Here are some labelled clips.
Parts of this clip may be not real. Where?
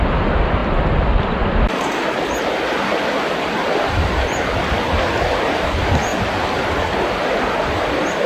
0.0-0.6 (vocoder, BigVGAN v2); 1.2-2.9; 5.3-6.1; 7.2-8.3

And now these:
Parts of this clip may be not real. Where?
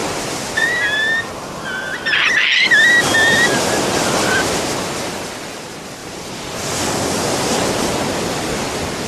none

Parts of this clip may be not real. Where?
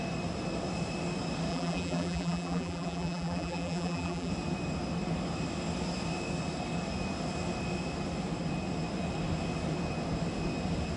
1.5-4.3 (vocoder, BigVGAN v2)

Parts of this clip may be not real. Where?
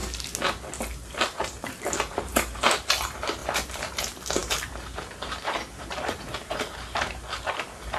1.7-8.0 (vocoder, BigVGAN v2)